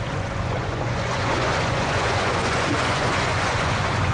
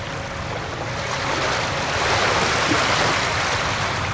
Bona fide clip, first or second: second